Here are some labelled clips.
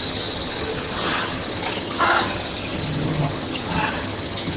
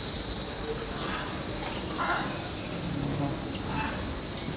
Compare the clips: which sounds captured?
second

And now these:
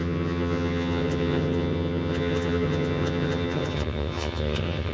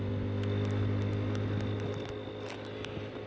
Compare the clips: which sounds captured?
second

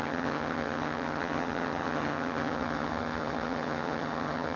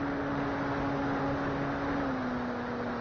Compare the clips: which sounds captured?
second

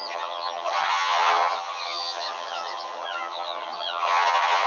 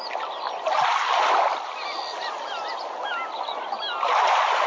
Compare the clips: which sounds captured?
second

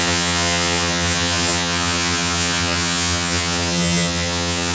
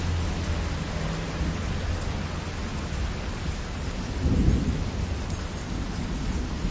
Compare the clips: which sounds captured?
second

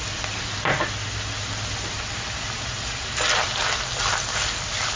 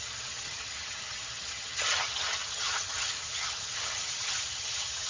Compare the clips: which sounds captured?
first